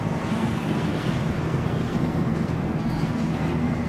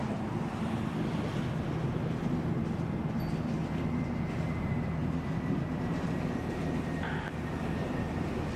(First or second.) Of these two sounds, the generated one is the first